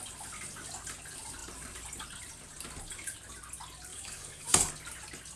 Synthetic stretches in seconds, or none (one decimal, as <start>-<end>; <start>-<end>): 3.9-4.7